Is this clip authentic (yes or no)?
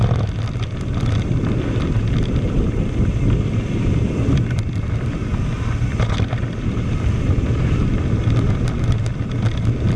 yes